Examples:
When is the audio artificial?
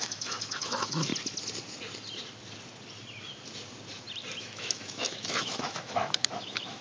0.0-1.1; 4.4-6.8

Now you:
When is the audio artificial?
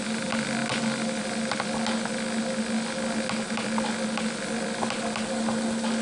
none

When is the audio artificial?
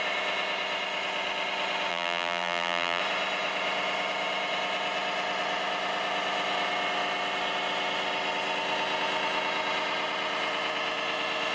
1.9-3.0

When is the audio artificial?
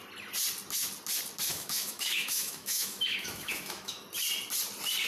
1.5-4.0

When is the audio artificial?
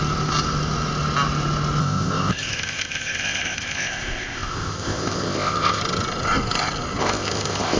1.8-5.8; 7.0-7.8